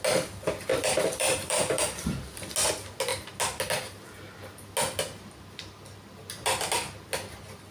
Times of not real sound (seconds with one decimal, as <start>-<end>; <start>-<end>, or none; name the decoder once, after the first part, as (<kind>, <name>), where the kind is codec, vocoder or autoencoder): 0.7-2.5 (vocoder, BigVGAN v2)